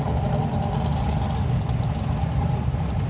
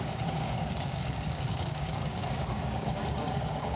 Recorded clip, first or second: first